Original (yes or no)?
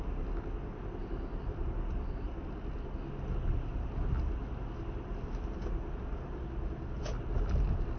yes